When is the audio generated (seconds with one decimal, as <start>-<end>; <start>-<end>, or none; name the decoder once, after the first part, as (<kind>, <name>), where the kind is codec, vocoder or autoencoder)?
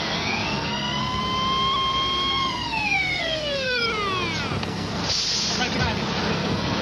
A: 0.0-1.2 (codec, SNAC); 2.3-3.8; 4.6-5.0; 6.3-6.8